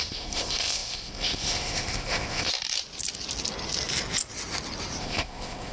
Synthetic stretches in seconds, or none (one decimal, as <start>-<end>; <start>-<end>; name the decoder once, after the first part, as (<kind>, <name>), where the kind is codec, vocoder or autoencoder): 0.0-2.5 (codec, ZipCodec); 5.0-5.7